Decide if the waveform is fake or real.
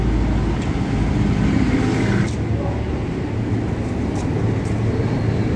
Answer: real